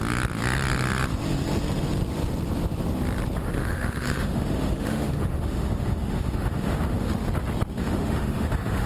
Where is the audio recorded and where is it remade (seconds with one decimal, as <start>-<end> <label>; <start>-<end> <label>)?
0.0-3.4 recorded; 3.4-7.1 remade; 7.1-7.8 recorded; 7.8-8.9 remade